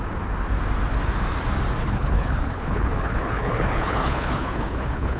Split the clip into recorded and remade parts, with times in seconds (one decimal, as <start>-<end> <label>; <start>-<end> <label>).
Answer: 0.0-1.8 recorded; 1.8-5.2 remade